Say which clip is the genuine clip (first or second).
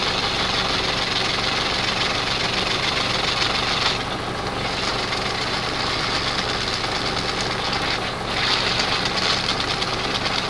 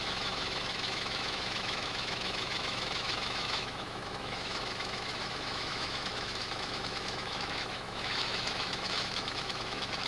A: first